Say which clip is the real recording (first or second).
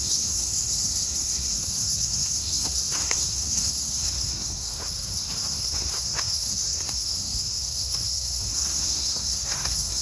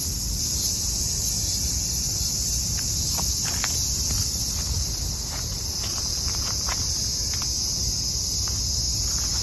second